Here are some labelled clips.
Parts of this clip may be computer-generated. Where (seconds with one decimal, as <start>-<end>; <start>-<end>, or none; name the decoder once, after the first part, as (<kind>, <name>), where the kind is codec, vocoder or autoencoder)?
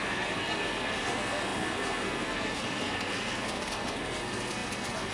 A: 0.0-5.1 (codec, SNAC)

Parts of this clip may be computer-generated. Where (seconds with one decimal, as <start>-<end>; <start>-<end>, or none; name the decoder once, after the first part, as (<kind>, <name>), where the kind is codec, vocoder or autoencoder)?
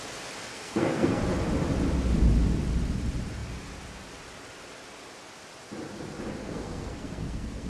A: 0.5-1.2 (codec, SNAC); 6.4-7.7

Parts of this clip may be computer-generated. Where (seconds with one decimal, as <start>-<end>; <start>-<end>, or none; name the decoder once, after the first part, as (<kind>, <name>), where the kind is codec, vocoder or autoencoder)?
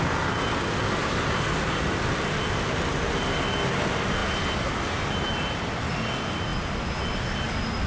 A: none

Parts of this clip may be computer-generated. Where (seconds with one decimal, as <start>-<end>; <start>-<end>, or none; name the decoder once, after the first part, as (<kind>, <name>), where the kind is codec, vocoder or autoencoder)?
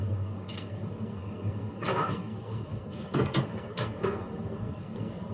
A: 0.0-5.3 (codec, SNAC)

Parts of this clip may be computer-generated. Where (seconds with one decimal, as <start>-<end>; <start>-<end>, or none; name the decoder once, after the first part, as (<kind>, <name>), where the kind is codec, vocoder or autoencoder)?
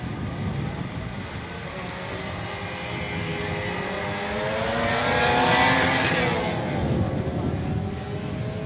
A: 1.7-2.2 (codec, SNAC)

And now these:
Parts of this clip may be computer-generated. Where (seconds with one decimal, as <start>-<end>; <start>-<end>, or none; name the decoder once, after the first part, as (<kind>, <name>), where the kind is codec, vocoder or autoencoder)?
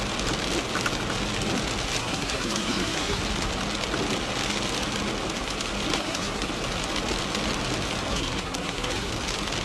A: 2.0-3.2 (codec, SNAC); 5.9-6.5; 8.1-9.1